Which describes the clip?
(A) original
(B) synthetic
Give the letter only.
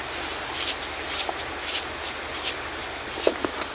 A